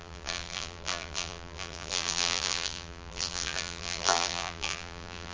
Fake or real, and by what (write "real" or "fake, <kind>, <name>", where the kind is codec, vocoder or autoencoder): fake, vocoder, BigVGAN v2